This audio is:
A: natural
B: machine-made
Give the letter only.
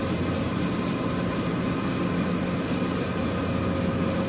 A